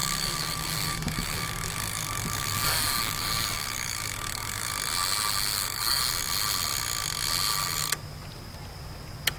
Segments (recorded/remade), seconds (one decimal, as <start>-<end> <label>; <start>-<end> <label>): 0.0-4.7 remade; 4.7-5.5 recorded; 5.5-6.0 remade; 6.0-9.4 recorded